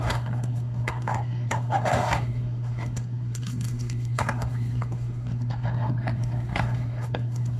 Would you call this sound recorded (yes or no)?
no